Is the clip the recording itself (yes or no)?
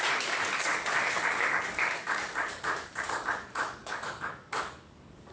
no